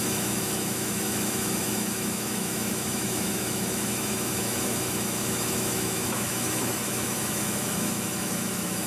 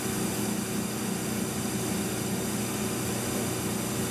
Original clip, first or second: second